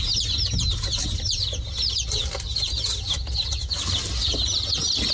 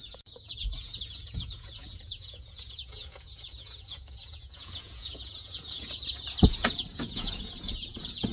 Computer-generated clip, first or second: second